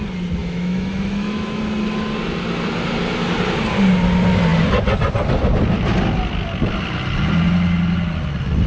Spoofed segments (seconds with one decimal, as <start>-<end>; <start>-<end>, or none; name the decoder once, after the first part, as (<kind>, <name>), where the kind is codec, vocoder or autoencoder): 0.4-1.6 (autoencoder, DAC-VAE)